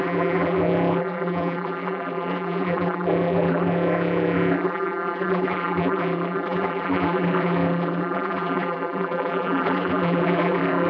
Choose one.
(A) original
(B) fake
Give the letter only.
B